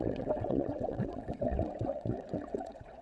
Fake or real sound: fake